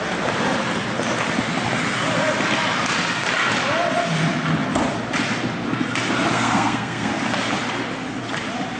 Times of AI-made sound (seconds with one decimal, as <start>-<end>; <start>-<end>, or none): 6.3-7.1